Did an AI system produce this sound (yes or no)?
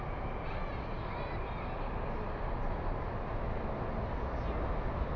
no